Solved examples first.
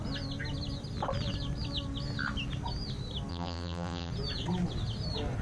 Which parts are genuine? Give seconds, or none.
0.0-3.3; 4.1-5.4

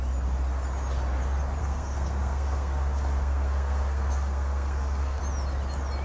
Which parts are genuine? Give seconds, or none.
0.0-1.6; 5.2-6.0

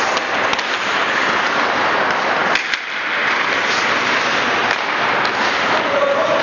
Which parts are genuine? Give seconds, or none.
0.0-6.4

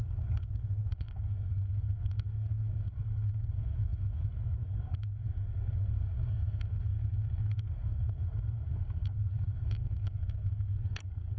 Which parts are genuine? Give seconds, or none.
none

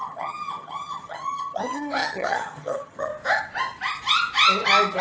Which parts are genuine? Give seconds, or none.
3.1-5.0

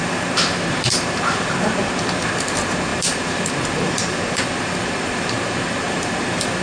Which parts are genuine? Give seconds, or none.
none

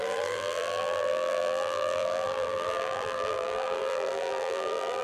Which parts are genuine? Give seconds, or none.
none